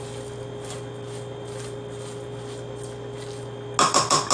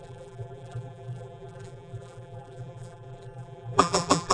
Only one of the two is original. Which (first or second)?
first